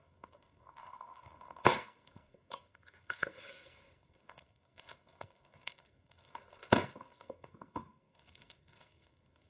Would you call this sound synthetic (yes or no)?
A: yes